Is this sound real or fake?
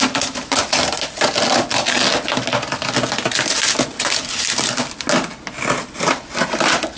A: real